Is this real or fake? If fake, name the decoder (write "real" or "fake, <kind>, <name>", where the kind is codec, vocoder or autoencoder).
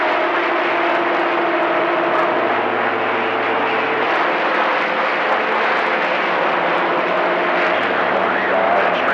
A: real